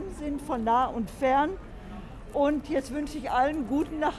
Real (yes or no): yes